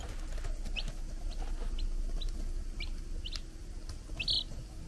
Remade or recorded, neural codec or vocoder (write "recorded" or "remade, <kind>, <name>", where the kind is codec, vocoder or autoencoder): recorded